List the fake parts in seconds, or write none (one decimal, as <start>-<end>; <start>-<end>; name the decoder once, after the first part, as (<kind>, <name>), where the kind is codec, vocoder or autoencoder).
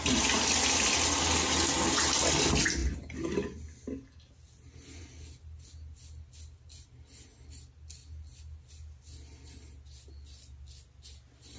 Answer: none